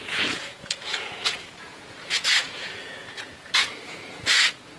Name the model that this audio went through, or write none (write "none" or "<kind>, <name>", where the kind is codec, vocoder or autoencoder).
vocoder, Vocos